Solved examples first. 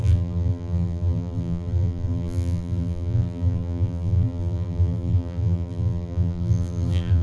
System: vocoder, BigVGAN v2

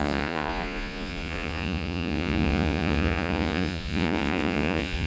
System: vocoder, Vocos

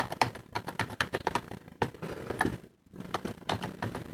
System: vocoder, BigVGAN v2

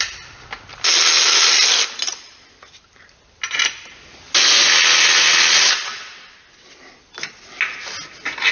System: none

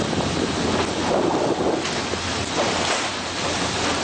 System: none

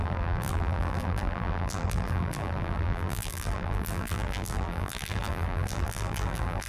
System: vocoder, BigVGAN v2